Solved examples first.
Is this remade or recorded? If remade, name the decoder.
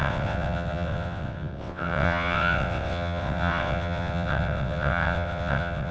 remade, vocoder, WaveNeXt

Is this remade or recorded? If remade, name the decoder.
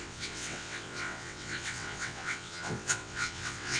remade, vocoder, WaveNeXt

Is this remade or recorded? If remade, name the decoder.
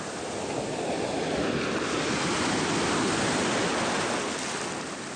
recorded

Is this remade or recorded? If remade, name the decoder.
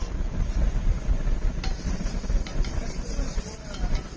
recorded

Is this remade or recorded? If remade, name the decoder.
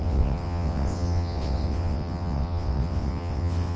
remade, vocoder, WaveNeXt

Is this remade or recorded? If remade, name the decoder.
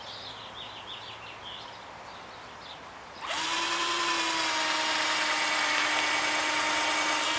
recorded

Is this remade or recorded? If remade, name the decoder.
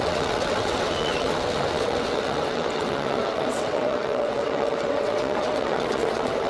remade, vocoder, WaveNeXt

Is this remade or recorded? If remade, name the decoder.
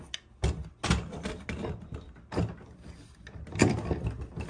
recorded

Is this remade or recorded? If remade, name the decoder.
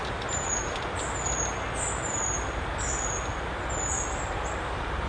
recorded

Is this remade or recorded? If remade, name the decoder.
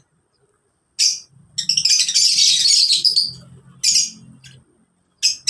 recorded